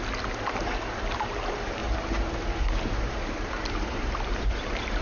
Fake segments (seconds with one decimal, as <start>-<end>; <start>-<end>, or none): 1.8-5.0